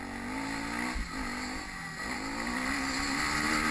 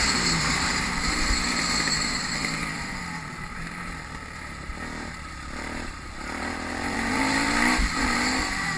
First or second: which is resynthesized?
second